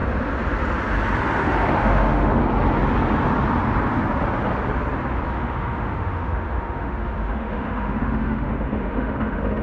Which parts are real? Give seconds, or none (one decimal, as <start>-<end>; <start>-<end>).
0.0-1.4; 2.4-5.3